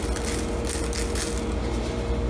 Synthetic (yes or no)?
no